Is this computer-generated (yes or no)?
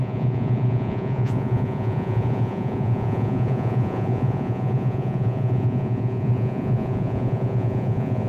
yes